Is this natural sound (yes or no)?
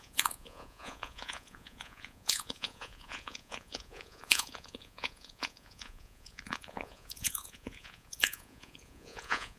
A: no